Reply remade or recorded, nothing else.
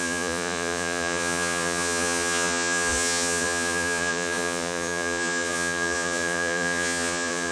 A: remade